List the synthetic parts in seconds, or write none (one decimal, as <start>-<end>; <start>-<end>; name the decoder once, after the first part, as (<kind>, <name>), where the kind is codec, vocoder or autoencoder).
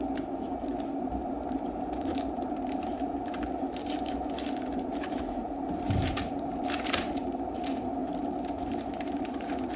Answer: 0.0-9.8 (vocoder, BigVGAN v2)